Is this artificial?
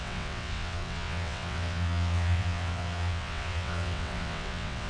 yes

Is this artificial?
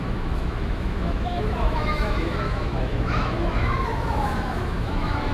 yes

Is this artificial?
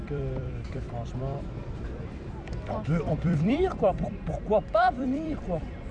yes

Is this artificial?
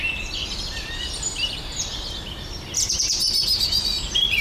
yes